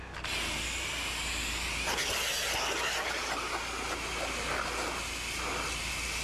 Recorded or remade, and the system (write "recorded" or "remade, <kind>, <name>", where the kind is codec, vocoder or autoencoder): recorded